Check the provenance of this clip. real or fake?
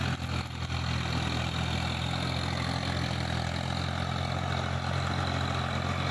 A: real